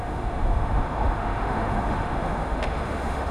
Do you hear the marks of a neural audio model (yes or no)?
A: yes